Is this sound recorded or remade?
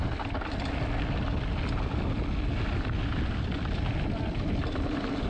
recorded